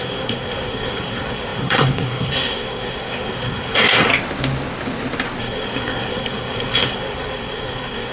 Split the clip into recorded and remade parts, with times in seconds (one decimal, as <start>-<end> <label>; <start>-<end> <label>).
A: 0.0-4.1 remade; 4.1-5.4 recorded; 5.4-8.1 remade